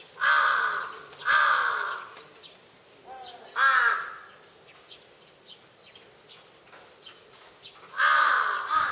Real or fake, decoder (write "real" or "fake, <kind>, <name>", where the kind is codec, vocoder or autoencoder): real